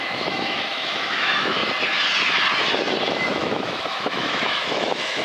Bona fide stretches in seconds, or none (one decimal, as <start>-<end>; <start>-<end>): 1.6-3.1